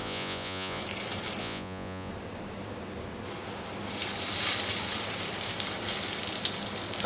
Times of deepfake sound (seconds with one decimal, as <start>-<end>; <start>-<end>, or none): 0.0-0.8; 1.4-2.1